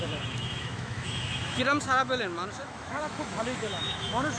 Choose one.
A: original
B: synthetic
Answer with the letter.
B